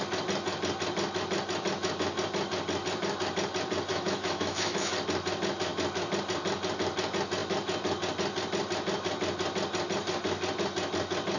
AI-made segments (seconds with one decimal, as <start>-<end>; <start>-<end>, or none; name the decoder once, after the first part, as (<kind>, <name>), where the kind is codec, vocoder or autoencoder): 3.9-4.9 (autoencoder, DAC-VAE)